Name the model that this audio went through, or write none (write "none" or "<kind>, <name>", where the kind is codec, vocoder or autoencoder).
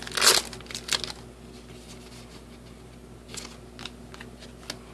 none